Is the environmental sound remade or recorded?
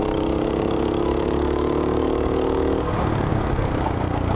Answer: remade